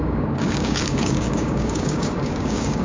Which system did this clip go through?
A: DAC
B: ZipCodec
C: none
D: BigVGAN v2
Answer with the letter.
A